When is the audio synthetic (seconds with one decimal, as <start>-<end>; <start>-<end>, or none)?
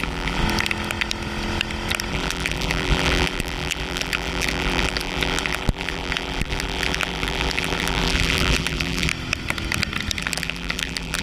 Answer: 0.0-0.4; 2.1-9.1; 10.2-11.2